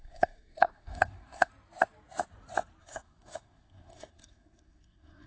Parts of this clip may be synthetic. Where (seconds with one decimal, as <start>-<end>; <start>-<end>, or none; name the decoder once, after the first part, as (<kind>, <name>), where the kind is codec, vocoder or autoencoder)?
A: 0.0-1.5 (codec, SNAC); 2.8-5.3